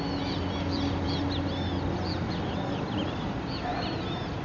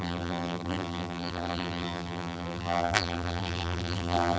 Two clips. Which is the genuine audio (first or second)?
first